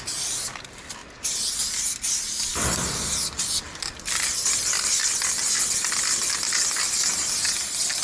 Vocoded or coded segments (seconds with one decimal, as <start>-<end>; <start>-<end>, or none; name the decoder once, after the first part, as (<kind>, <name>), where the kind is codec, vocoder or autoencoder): none